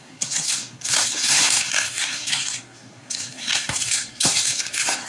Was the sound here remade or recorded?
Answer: remade